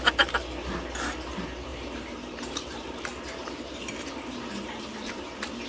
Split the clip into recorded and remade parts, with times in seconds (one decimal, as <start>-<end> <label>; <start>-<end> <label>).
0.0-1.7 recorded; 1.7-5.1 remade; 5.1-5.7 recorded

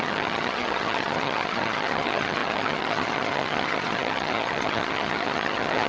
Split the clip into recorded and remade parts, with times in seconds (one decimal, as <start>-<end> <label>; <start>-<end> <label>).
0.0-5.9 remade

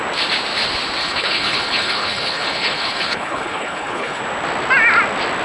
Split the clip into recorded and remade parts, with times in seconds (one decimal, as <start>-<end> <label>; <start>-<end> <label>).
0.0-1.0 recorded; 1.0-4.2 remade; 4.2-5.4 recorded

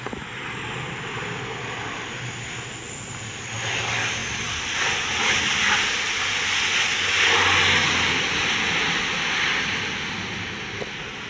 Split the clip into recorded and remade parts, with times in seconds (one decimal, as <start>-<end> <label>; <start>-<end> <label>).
0.0-11.3 recorded

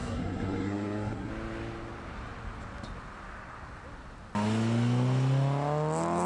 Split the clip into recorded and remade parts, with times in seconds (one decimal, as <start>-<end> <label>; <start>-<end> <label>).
0.0-1.3 remade; 1.3-6.3 recorded

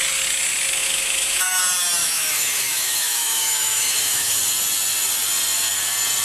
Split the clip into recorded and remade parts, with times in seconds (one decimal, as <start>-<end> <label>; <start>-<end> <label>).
0.0-0.8 recorded; 0.8-1.6 remade; 1.6-2.0 recorded; 2.0-4.4 remade; 4.4-6.2 recorded

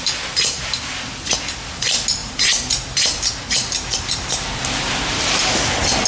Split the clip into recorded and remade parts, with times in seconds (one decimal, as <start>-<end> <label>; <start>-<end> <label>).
0.0-2.2 recorded; 2.2-5.3 remade; 5.3-6.1 recorded

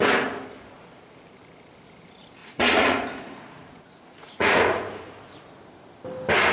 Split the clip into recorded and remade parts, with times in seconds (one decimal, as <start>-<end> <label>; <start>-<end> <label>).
0.0-2.4 recorded; 2.4-5.1 remade; 5.1-6.5 recorded